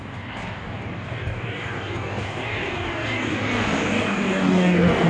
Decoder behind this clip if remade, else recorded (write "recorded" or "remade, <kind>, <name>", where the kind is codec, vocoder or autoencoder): remade, codec, DAC